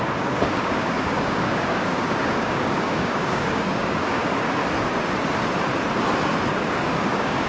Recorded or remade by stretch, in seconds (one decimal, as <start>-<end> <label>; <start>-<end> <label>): 0.0-4.6 remade; 4.6-6.5 recorded; 6.5-7.5 remade